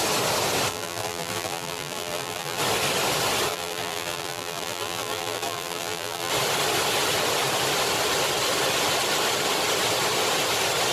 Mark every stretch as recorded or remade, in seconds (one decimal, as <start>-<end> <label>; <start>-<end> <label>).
0.0-0.7 recorded; 0.7-2.6 remade; 2.6-3.5 recorded; 3.5-6.3 remade; 6.3-10.9 recorded